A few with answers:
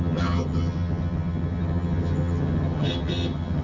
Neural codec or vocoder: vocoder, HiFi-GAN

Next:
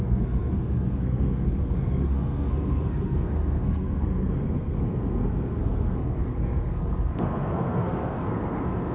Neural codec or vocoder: codec, SNAC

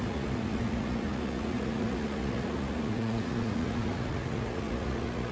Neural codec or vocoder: vocoder, Vocos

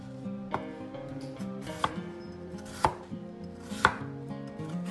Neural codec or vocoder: vocoder, BigVGAN v2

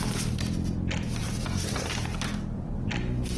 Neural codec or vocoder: none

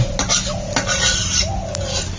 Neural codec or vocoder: none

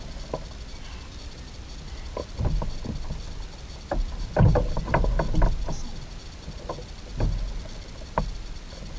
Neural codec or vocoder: none